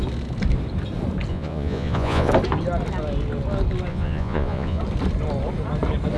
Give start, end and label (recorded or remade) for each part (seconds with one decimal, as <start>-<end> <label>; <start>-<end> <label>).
0.0-1.3 recorded; 1.3-2.3 remade; 2.3-3.9 recorded; 3.9-4.8 remade; 4.8-6.2 recorded